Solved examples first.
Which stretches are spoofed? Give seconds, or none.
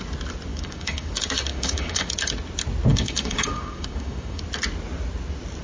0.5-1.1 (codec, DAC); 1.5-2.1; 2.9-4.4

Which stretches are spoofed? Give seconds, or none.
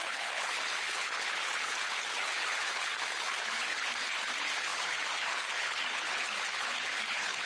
0.0-7.5 (codec, HILCodec)